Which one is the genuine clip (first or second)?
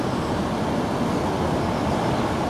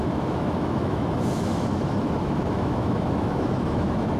first